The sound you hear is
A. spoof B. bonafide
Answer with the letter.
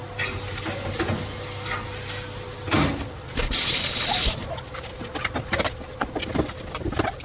B